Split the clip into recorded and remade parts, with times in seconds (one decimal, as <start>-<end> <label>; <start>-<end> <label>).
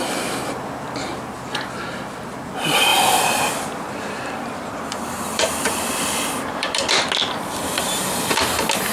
0.0-2.9 recorded; 2.9-6.9 remade; 6.9-8.9 recorded